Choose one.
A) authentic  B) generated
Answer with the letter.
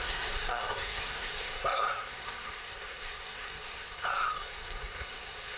B